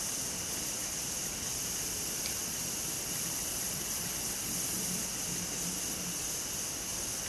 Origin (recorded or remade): recorded